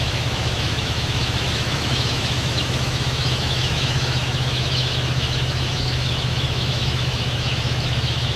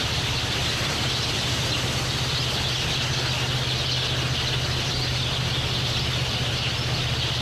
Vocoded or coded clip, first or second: first